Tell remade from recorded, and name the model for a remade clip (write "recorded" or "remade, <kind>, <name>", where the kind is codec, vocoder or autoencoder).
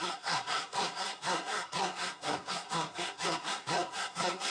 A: remade, codec, SNAC